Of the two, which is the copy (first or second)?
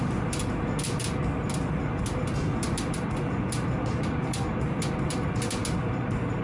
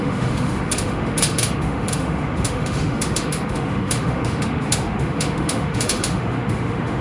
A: second